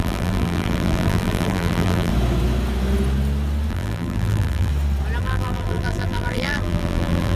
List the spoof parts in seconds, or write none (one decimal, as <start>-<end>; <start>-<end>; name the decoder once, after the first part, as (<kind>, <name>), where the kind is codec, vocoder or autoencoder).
0.0-2.1 (vocoder, BigVGAN v2); 3.7-4.7; 5.2-7.4